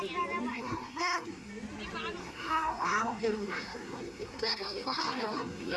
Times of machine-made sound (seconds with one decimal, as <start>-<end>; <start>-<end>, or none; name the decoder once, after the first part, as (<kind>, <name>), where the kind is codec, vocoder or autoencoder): 0.5-1.5 (codec, SNAC); 2.2-5.8